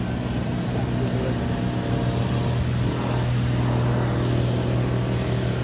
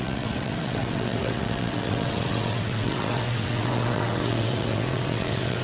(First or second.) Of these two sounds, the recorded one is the first